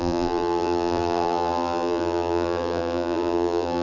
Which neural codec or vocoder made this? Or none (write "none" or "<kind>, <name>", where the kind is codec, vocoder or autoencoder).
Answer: vocoder, BigVGAN v2